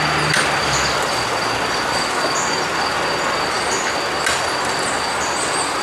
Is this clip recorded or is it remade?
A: recorded